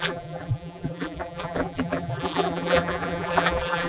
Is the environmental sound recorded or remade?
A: remade